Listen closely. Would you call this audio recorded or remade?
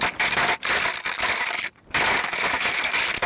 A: recorded